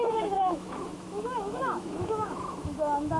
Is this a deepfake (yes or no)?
yes